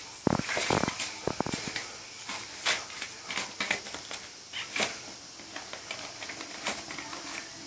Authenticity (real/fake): real